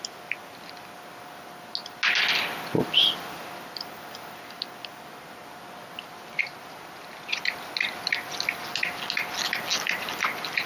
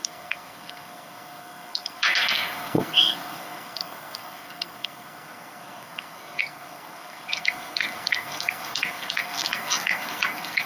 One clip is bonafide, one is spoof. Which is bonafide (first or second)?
first